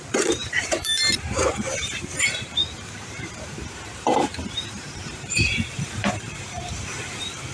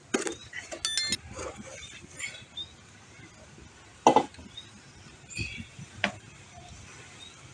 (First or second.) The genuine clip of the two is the second